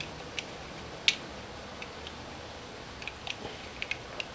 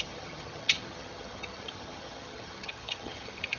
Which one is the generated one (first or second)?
second